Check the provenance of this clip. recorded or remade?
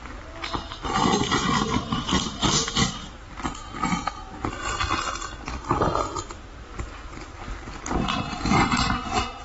recorded